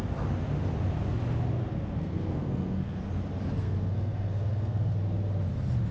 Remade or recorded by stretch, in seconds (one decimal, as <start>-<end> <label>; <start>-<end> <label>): 0.0-1.7 recorded; 1.7-3.0 remade; 3.0-3.6 recorded; 3.6-4.9 remade; 4.9-5.9 recorded